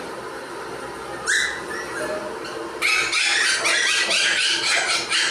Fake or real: real